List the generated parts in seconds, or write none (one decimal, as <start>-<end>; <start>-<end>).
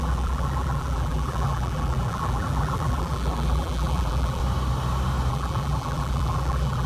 0.0-4.4; 5.3-6.9